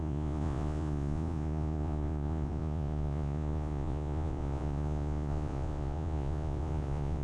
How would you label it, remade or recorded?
remade